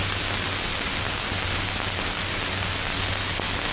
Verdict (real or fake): real